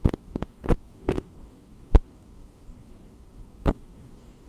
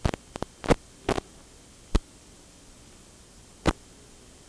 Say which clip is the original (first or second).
second